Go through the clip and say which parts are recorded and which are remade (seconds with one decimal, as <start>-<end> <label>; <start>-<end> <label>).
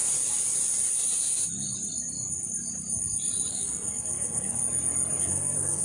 0.0-3.5 recorded; 3.5-4.6 remade; 4.6-5.2 recorded; 5.2-5.8 remade